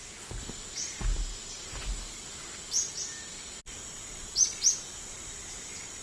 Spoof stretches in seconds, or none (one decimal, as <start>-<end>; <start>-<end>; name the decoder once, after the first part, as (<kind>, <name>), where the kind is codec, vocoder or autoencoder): none

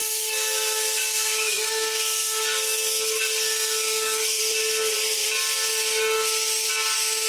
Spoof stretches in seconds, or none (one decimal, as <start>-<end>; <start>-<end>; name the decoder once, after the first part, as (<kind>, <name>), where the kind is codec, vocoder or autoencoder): 0.0-4.4 (codec, SNAC)

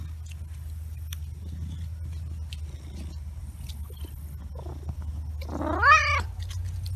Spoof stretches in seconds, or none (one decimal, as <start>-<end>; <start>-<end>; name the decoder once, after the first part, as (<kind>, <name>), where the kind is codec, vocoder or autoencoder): none

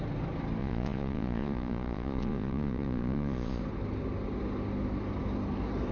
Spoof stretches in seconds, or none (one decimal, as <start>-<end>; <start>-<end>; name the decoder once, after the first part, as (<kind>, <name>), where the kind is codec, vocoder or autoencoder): 0.6-3.6 (vocoder, Vocos)

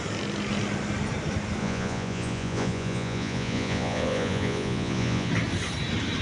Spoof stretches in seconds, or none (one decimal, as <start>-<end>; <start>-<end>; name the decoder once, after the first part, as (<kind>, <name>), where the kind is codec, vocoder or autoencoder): 1.6-5.3 (vocoder, Vocos)

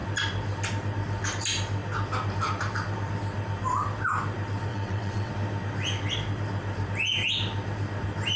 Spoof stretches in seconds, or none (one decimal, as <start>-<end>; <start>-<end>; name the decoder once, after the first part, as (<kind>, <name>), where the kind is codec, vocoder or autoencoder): 4.7-5.3 (vocoder, WaveNeXt)

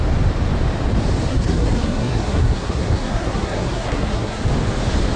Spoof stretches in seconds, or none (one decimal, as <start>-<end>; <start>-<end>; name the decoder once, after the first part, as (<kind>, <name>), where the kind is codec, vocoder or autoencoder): 1.3-4.4 (codec, SNAC)